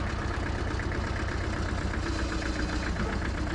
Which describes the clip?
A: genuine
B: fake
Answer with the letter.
A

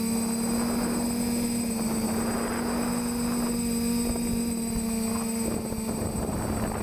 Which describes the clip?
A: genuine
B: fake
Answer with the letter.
A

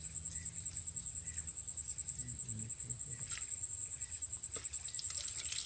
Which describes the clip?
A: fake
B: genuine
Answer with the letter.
B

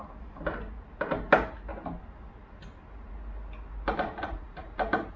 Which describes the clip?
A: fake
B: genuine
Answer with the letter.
B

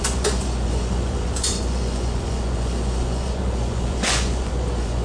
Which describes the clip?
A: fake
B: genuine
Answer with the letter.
A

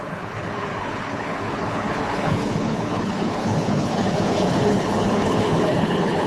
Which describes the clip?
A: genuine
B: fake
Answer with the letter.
B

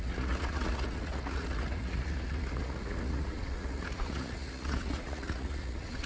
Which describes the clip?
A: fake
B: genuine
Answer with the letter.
A